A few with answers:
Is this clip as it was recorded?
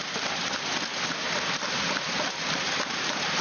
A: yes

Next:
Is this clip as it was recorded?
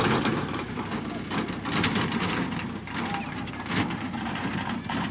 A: yes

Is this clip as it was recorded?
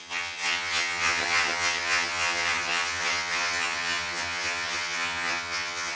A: no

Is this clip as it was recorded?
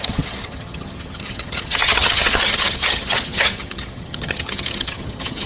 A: no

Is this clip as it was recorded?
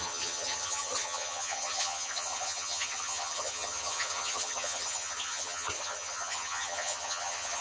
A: no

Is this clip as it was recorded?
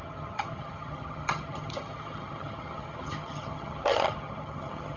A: no